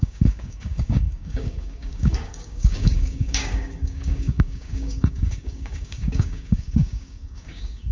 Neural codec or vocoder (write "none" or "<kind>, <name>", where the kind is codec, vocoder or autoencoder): codec, DAC